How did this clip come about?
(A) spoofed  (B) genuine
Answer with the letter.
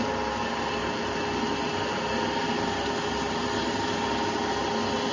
B